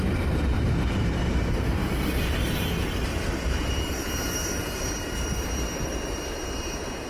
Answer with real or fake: fake